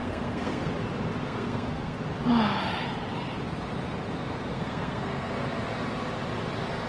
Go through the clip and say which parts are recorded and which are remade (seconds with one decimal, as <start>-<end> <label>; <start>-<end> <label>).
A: 0.0-0.7 remade; 0.7-1.2 recorded; 1.2-2.0 remade; 2.0-4.5 recorded; 4.5-5.3 remade; 5.3-6.9 recorded

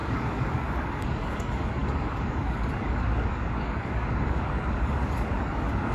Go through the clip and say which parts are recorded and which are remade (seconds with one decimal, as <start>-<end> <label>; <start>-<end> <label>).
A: 0.0-5.9 remade